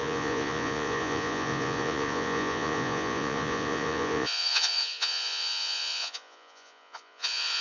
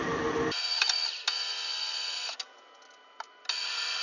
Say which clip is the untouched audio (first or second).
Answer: second